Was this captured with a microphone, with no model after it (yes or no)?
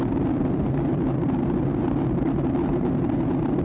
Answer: no